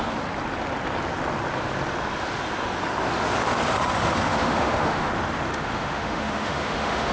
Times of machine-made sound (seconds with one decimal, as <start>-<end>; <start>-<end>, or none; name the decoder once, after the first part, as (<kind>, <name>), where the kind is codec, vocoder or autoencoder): 4.3-5.1 (autoencoder, DAC-VAE); 5.5-7.1